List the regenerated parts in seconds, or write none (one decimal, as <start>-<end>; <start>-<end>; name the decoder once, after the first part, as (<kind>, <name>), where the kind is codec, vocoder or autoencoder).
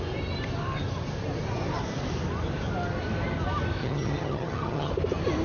3.8-4.9 (vocoder, HiFi-GAN)